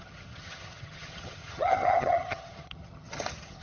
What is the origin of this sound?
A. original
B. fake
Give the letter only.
B